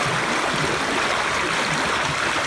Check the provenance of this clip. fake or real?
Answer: real